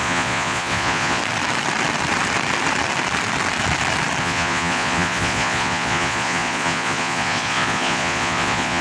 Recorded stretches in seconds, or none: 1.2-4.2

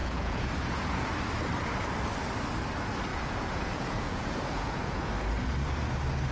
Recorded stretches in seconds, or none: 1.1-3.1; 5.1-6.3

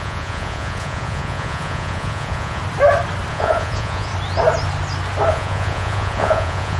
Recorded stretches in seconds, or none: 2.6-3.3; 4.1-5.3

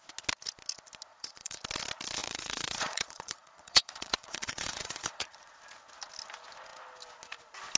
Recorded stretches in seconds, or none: 0.0-1.1; 1.6-2.2; 5.6-7.8

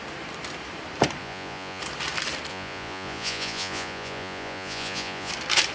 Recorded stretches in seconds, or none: 0.0-1.2; 1.8-2.5; 5.3-5.7

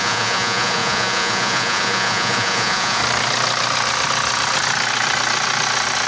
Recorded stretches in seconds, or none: 3.0-6.1

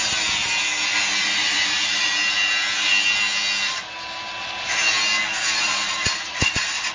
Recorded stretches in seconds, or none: 0.0-1.2; 2.1-5.7